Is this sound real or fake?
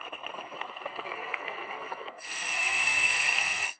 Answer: fake